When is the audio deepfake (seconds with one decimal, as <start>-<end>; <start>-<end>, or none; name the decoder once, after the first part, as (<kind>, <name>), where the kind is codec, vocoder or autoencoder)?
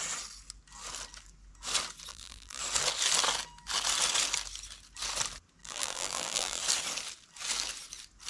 2.1-2.6 (vocoder, BigVGAN v2); 5.6-6.6